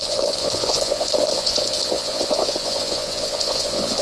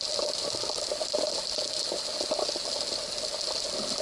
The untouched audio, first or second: second